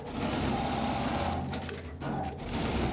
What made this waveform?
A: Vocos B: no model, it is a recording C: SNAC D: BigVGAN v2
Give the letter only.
D